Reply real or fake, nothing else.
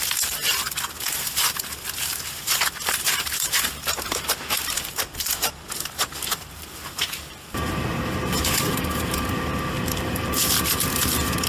fake